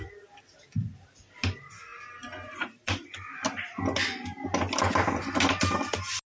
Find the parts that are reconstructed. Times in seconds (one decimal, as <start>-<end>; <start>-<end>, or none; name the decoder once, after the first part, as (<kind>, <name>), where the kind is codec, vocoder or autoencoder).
none